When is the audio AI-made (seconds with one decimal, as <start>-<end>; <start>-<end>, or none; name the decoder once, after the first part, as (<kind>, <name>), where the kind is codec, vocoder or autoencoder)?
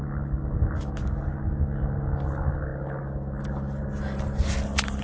none